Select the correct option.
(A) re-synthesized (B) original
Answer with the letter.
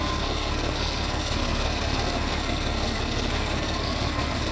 A